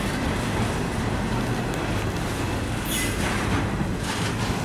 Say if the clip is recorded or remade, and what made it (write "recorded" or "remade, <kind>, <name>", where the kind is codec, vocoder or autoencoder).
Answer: recorded